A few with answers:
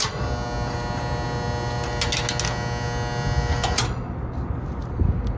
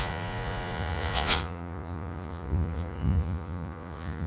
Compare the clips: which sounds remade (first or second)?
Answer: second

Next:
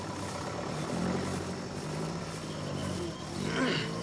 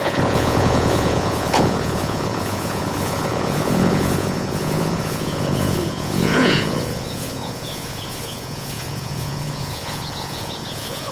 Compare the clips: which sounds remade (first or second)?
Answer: second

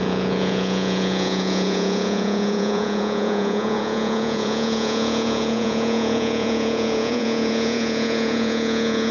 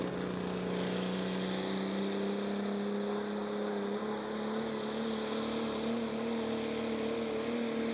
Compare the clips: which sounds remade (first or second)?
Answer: first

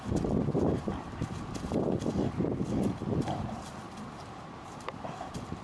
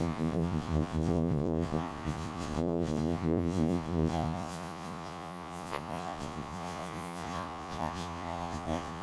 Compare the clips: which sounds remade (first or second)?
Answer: second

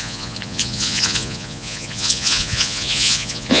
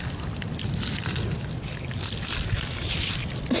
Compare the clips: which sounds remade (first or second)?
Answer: first